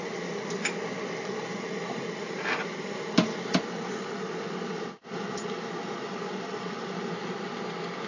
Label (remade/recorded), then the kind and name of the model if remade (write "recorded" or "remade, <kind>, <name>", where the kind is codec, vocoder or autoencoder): recorded